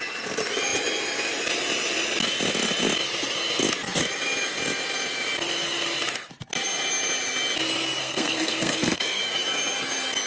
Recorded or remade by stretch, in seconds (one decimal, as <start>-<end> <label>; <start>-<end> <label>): 0.0-8.0 recorded; 8.0-9.2 remade; 9.2-10.3 recorded